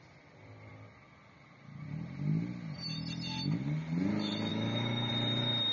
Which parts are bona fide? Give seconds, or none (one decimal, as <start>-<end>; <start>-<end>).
0.0-4.5; 5.1-5.7